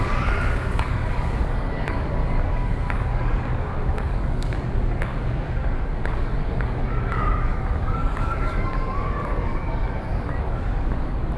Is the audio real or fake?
fake